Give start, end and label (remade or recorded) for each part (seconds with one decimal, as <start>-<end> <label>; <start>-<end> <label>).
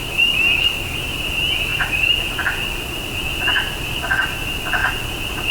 0.0-1.0 remade; 1.0-5.5 recorded